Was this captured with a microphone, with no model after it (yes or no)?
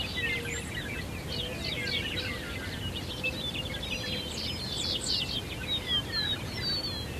yes